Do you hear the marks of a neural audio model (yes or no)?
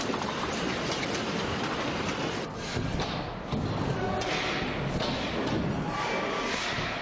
no